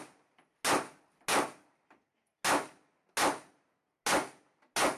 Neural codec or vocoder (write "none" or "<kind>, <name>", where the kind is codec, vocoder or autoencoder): none